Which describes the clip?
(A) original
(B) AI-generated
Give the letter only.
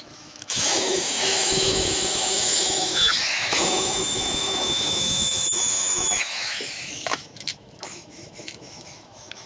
B